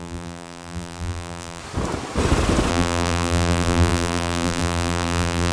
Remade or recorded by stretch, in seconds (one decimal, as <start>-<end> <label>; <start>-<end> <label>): 0.0-1.6 remade; 1.6-2.7 recorded; 2.7-5.5 remade